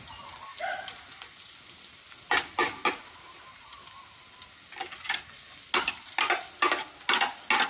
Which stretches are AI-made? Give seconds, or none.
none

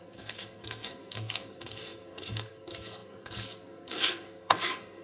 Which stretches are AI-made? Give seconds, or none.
0.0-5.0 (codec, SNAC)

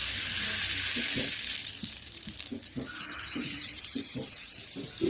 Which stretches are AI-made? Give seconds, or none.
1.0-2.5 (vocoder, BigVGAN v2); 3.4-5.1

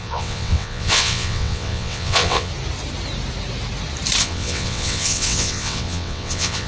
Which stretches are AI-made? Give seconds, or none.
0.0-2.5 (vocoder, WaveNeXt); 4.2-6.7

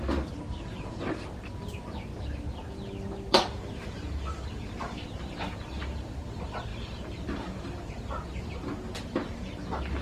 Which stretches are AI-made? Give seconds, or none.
0.0-10.0 (vocoder, BigVGAN v2)